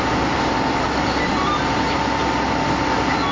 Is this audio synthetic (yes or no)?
no